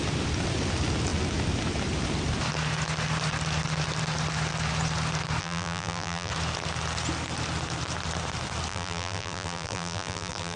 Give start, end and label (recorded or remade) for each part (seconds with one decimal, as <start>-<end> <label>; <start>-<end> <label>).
0.0-5.4 recorded; 5.4-6.3 remade; 6.3-8.7 recorded; 8.7-10.6 remade